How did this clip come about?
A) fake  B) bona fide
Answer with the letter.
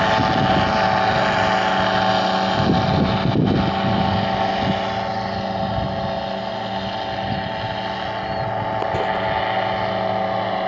B